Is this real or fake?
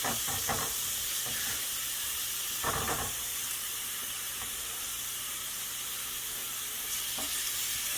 fake